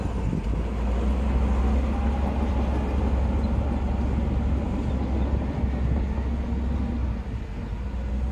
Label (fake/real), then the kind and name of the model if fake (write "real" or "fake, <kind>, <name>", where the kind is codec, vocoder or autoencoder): real